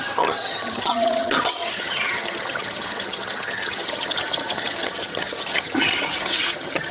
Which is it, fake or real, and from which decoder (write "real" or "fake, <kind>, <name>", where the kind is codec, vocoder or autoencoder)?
fake, vocoder, HiFi-GAN